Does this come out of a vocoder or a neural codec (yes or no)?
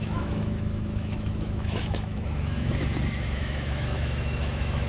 yes